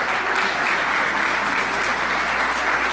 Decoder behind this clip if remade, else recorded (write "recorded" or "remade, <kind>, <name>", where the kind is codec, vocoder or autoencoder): recorded